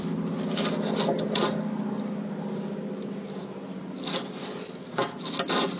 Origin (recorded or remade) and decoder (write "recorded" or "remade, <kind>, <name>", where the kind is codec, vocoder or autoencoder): recorded